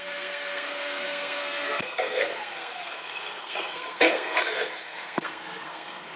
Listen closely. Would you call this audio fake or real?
fake